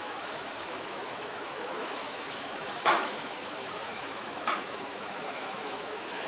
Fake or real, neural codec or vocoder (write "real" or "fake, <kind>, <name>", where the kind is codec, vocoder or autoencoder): fake, autoencoder, DAC-VAE